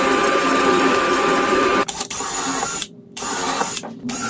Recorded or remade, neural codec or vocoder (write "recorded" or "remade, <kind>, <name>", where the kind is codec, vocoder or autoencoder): remade, vocoder, BigVGAN v2